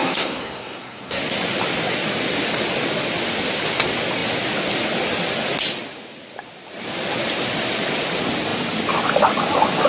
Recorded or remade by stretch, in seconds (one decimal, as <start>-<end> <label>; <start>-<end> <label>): 0.0-1.2 remade; 1.2-9.9 recorded